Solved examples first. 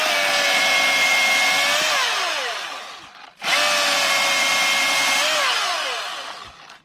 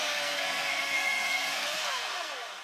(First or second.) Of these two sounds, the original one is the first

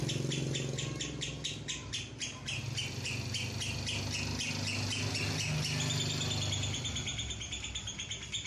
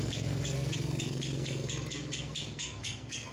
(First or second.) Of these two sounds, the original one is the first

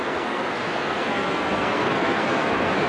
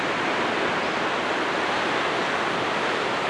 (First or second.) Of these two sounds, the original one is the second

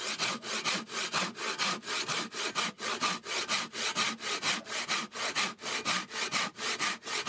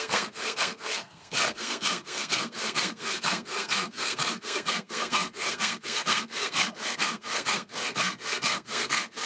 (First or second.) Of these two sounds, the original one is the first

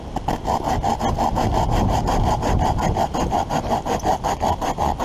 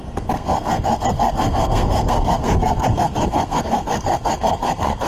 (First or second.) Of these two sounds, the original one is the first